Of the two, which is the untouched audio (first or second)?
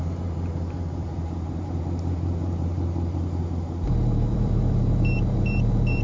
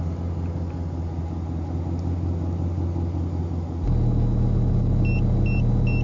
second